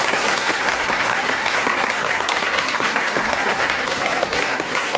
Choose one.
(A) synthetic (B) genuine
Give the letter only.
A